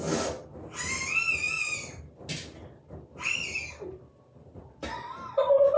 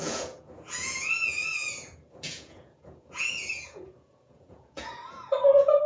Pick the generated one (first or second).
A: second